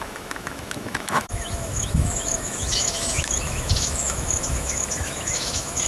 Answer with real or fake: fake